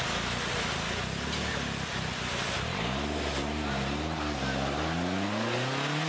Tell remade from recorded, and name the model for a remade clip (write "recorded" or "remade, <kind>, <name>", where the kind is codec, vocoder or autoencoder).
recorded